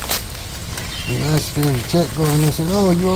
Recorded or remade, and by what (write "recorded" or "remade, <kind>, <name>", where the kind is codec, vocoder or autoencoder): recorded